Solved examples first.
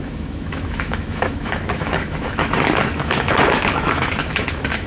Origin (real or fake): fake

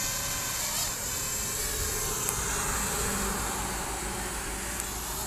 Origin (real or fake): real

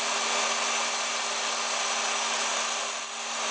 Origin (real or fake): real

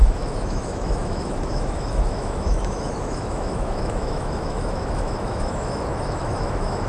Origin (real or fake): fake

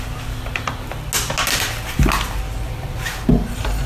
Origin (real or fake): real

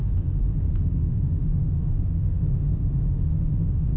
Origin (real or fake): fake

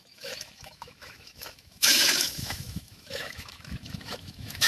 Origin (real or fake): fake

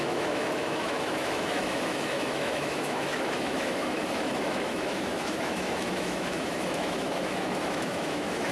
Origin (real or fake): fake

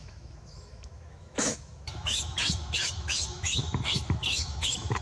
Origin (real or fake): fake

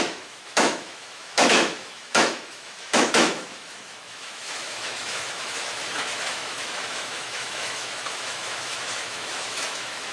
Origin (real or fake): fake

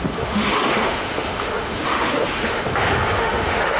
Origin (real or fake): fake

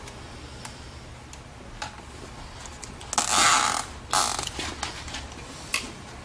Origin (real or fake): real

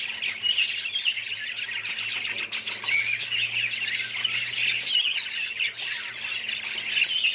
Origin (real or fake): real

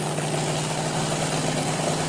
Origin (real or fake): real